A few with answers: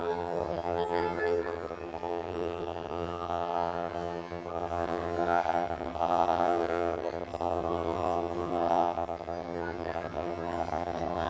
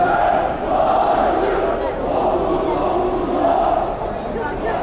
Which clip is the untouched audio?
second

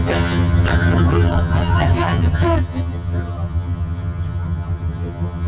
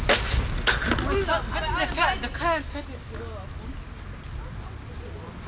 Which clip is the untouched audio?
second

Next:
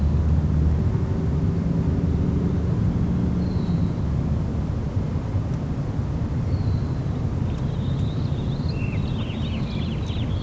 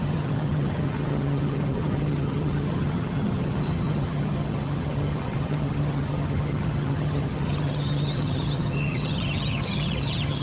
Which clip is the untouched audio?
first